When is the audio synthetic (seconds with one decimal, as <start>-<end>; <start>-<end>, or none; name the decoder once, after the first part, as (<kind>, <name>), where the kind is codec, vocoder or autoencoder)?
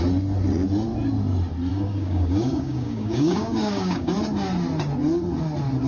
1.7-4.1 (codec, DAC)